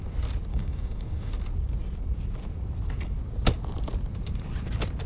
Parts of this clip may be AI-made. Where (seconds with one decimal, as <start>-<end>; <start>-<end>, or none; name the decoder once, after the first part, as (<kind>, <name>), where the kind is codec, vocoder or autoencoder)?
0.5-1.3 (codec, DAC)

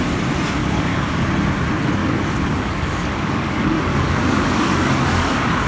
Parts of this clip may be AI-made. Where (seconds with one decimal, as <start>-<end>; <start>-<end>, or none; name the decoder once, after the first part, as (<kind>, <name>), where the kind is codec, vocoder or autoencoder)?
0.6-1.1 (codec, DAC); 2.0-5.7

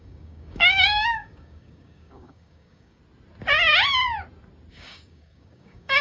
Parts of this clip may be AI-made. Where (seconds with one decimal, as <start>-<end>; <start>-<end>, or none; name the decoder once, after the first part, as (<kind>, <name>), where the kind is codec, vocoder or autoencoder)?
0.0-3.0 (codec, DAC); 4.7-6.0

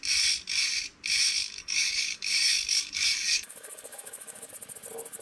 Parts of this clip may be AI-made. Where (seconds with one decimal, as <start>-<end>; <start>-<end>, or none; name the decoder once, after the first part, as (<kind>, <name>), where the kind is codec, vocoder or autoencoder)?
1.4-4.5 (codec, DAC)